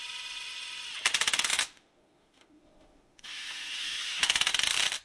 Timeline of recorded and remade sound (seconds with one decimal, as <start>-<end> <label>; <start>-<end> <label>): 0.0-1.5 recorded; 1.5-4.5 remade; 4.5-5.0 recorded